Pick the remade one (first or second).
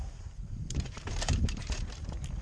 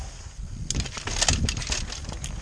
first